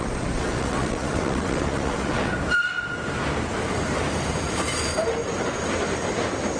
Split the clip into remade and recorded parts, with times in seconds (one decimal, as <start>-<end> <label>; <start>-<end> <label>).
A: 0.0-2.3 remade; 2.3-6.6 recorded